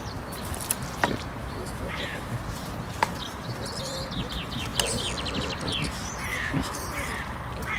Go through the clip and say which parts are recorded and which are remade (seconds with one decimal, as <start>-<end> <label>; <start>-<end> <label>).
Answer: 0.0-1.4 recorded; 1.4-2.4 remade; 2.4-6.3 recorded; 6.3-6.8 remade; 6.8-7.8 recorded